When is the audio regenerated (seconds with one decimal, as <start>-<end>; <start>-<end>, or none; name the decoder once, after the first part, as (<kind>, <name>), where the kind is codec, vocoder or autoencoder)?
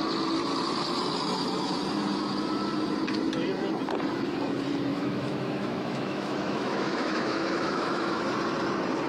4.9-8.2 (autoencoder, DAC-VAE)